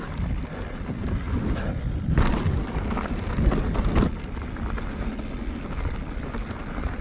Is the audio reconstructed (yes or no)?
no